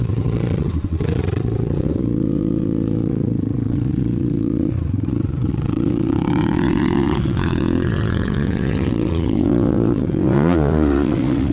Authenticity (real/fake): fake